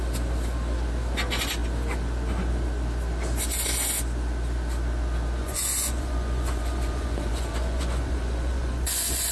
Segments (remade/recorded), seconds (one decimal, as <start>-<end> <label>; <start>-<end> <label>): 0.0-5.4 recorded; 5.4-9.3 remade